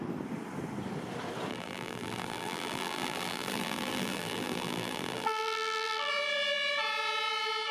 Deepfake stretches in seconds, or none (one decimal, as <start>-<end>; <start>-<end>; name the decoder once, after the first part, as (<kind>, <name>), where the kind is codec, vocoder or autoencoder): 1.5-6.1 (vocoder, BigVGAN v2)